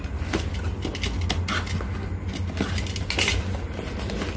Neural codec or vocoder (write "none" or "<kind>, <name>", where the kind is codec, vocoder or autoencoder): none